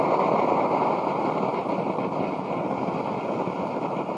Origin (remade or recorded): recorded